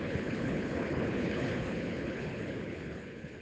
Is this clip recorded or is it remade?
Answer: remade